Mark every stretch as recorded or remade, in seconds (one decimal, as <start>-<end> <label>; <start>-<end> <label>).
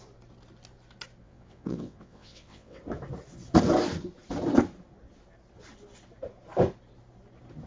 0.0-1.2 recorded; 1.2-2.8 remade; 2.8-7.7 recorded